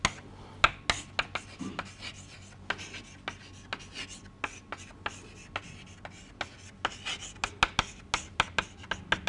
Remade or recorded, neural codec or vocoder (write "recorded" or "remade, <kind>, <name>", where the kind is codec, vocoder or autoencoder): recorded